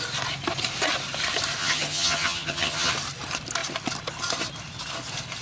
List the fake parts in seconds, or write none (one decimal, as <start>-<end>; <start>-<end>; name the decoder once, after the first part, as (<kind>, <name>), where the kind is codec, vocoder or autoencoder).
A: 1.6-2.9 (vocoder, HiFi-GAN)